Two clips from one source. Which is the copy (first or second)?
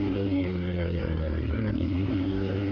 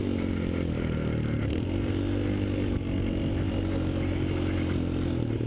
first